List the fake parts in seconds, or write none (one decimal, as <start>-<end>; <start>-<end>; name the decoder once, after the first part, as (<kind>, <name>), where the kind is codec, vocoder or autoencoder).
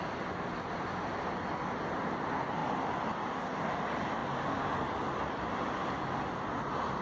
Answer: none